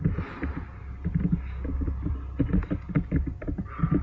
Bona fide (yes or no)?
yes